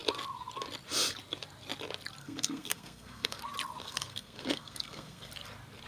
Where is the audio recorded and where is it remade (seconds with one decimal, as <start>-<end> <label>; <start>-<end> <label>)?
0.0-2.2 recorded; 2.2-3.4 remade; 3.4-3.8 recorded; 3.8-5.3 remade; 5.3-5.9 recorded